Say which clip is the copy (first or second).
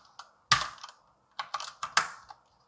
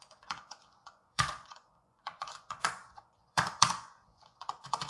second